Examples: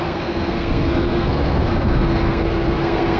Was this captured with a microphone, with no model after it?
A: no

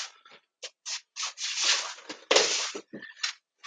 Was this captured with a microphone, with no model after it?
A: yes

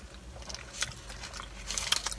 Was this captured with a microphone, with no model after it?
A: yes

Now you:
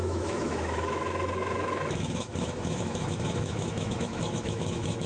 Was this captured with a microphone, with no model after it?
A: no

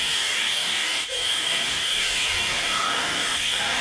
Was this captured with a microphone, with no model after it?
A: no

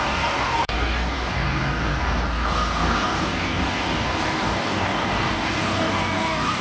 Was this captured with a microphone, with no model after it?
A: no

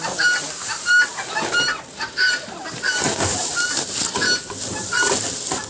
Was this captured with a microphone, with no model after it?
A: yes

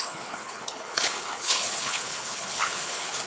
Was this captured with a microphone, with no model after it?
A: no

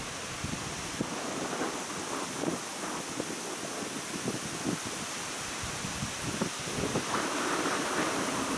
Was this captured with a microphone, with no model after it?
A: yes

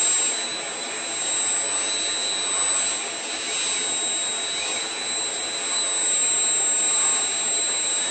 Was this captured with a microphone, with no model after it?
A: yes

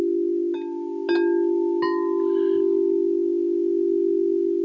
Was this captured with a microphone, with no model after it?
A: yes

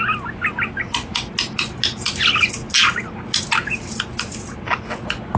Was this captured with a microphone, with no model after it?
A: yes